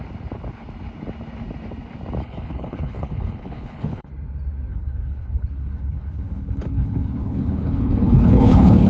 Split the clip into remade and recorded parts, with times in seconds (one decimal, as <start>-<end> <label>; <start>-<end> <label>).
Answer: 0.0-2.2 recorded; 2.2-4.1 remade; 4.1-4.7 recorded; 4.7-8.9 remade